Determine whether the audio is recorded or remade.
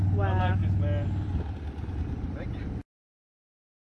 recorded